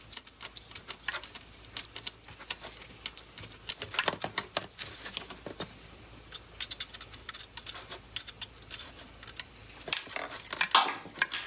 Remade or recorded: recorded